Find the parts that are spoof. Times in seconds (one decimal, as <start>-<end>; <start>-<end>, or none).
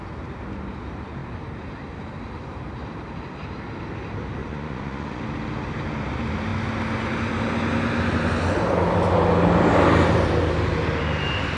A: 4.4-5.2